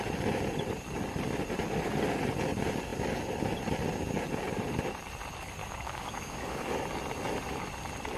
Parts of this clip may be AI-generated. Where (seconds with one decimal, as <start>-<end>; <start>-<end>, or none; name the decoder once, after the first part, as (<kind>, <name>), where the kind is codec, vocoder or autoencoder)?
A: 5.6-6.7 (codec, DAC)